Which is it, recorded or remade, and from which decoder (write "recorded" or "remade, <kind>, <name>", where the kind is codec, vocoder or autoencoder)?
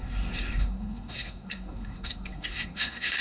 remade, codec, SNAC